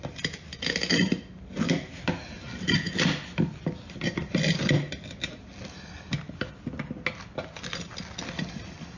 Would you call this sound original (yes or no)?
yes